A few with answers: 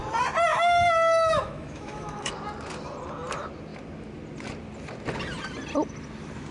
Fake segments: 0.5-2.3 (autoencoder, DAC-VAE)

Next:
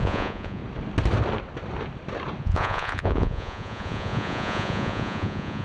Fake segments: 0.0-0.6 (vocoder, Vocos); 2.4-5.6

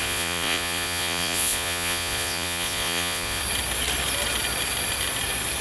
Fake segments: 0.0-3.4 (vocoder, Vocos)